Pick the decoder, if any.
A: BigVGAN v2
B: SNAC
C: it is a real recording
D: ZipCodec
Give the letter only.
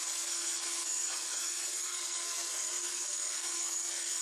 B